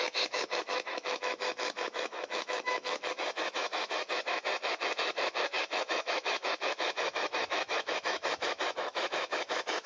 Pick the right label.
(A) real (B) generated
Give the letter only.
B